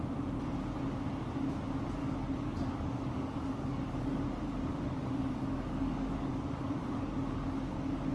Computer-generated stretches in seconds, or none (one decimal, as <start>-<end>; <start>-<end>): 2.0-4.2; 4.7-8.1